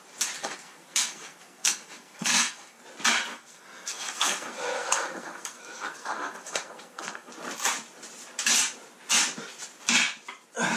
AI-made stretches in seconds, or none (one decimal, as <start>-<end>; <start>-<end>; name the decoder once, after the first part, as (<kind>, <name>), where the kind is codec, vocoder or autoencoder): 0.4-2.8 (codec, SNAC); 3.3-7.3